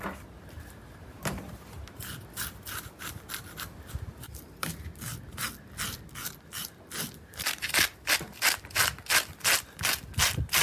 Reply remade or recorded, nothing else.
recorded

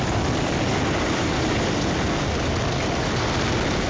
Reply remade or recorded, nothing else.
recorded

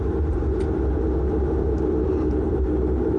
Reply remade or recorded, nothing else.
remade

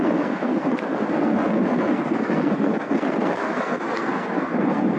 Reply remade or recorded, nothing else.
remade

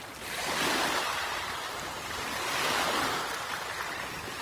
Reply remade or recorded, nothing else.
recorded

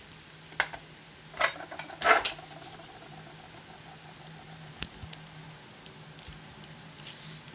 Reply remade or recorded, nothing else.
recorded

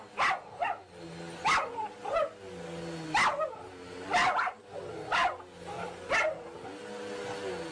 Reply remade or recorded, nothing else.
recorded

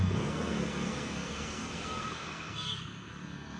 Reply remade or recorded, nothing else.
remade